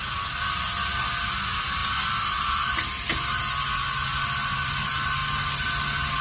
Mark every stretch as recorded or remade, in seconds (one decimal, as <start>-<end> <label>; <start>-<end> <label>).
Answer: 0.0-6.2 recorded